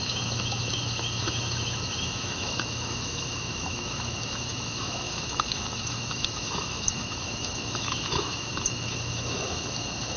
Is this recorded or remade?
remade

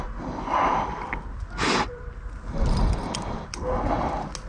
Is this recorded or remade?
recorded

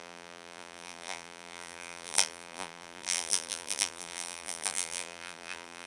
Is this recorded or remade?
remade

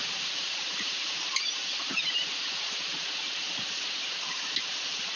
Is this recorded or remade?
recorded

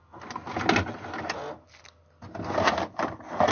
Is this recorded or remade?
recorded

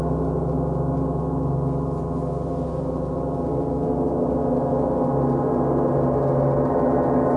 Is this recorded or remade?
recorded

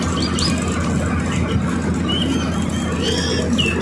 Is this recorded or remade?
recorded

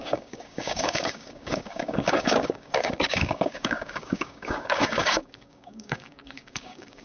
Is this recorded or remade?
remade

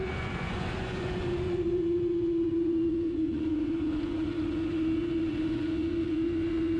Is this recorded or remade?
remade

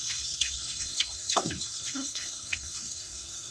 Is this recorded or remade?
remade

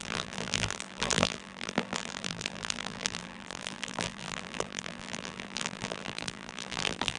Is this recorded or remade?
remade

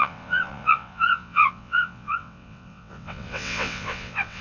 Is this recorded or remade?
remade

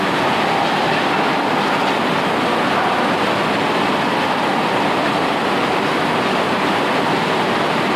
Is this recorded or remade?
recorded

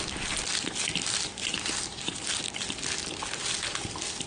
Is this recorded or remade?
recorded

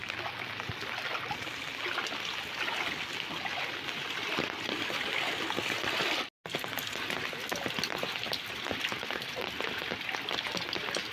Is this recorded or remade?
recorded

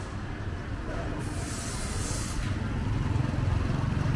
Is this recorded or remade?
recorded